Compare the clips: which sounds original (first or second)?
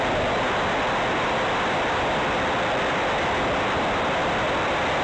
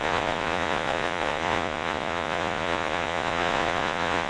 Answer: first